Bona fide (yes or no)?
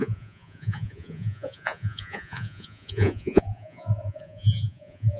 no